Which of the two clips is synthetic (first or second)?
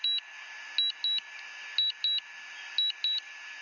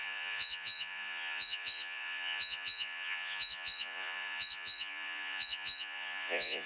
second